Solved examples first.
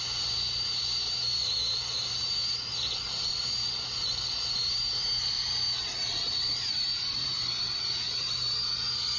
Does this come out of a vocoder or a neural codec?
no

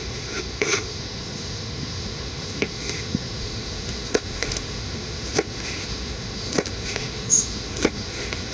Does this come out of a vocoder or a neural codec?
yes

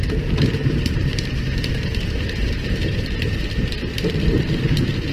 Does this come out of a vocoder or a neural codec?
yes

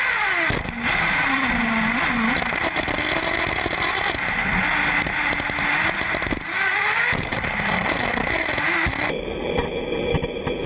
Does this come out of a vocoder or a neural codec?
no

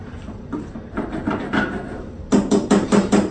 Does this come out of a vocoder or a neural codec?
yes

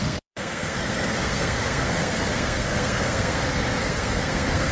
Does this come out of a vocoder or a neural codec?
yes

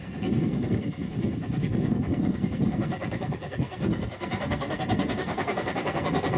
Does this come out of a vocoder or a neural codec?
yes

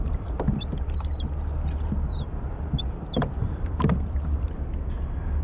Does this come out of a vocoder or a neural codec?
yes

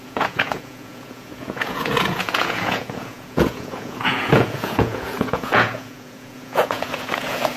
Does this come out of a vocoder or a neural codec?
yes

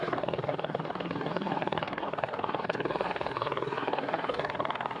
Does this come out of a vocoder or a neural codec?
yes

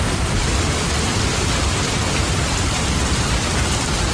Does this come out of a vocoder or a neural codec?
yes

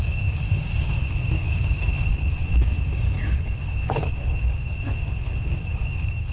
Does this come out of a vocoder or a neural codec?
yes